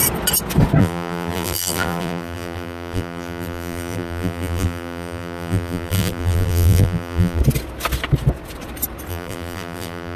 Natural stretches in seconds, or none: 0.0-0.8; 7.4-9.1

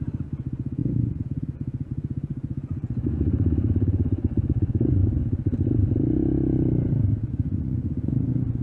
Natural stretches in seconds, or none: 5.0-7.3

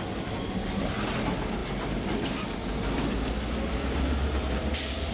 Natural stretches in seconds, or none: 0.0-5.1

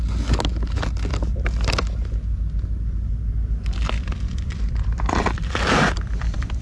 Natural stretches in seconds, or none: 0.0-1.1; 1.7-3.6

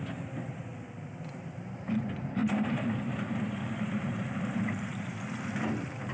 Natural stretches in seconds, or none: 0.0-2.4; 5.1-6.1

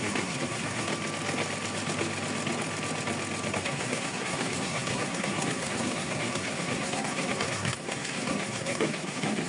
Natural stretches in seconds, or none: 0.9-3.5